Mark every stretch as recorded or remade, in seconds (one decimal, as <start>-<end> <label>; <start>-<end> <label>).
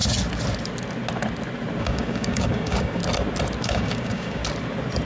0.0-1.8 recorded; 1.8-3.0 remade; 3.0-3.6 recorded; 3.6-4.4 remade; 4.4-5.1 recorded